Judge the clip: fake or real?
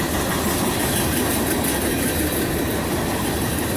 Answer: real